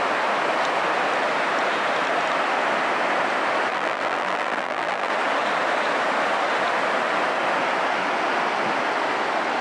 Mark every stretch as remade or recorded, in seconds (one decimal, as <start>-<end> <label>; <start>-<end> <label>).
0.0-3.7 recorded; 3.7-5.1 remade; 5.1-9.6 recorded